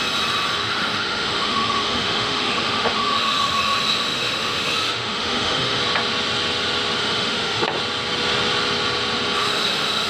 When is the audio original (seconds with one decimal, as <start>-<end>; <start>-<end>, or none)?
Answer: 0.0-0.6; 5.8-7.0; 7.6-9.4